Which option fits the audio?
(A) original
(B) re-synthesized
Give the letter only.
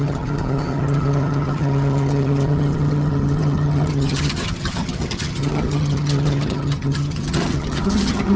B